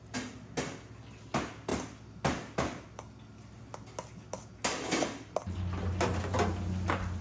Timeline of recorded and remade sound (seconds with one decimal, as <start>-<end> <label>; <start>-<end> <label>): 0.0-7.2 recorded